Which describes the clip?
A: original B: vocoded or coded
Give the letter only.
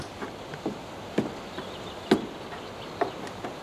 A